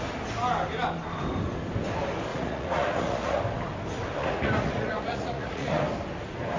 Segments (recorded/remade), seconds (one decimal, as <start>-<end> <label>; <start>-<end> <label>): 0.0-2.3 recorded; 2.3-3.4 remade; 3.4-4.2 recorded; 4.2-5.8 remade; 5.8-6.6 recorded